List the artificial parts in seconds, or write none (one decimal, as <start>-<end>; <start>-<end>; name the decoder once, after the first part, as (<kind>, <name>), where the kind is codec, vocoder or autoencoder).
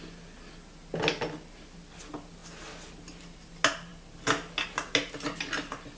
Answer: none